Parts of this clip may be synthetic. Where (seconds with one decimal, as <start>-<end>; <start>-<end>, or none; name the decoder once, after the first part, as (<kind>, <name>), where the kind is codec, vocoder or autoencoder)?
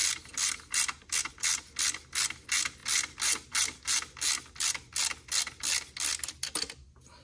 none